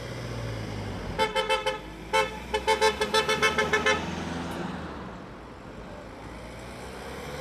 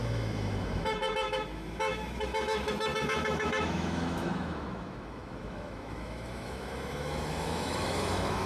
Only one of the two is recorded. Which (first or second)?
first